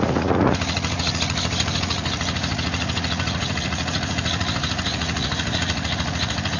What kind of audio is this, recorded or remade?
remade